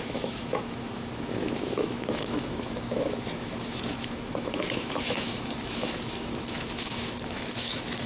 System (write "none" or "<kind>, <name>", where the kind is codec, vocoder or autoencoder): autoencoder, DAC-VAE